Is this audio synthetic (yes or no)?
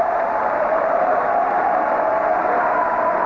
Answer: yes